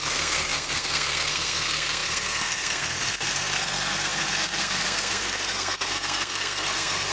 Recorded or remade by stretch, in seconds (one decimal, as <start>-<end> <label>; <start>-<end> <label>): 0.0-7.1 remade